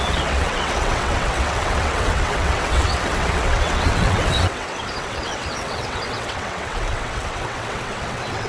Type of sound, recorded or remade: remade